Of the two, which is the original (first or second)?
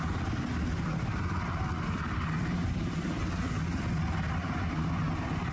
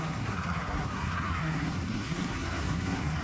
first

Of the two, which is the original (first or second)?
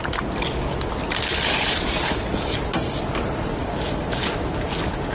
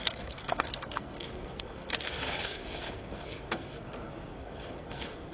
first